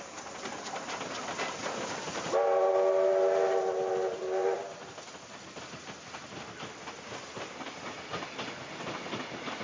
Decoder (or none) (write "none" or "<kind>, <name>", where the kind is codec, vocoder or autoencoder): none